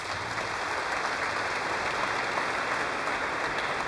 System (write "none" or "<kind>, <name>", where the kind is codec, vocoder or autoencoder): none